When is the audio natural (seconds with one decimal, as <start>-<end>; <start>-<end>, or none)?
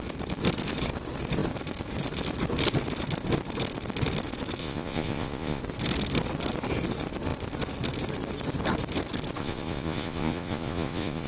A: 0.0-4.6; 5.6-9.4